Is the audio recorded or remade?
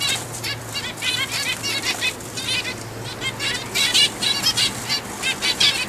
remade